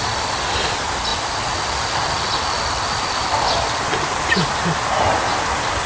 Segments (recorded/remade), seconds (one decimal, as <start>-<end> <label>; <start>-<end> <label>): 0.0-5.9 recorded